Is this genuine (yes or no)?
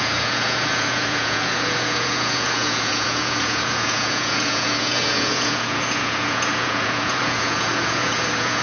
no